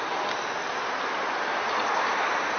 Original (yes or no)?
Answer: yes